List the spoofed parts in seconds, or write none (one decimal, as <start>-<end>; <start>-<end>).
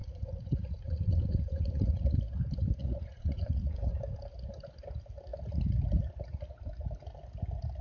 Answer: 0.0-2.2; 2.8-3.9